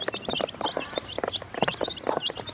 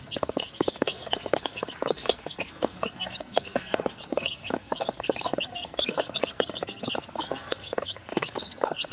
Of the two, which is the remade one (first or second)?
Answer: second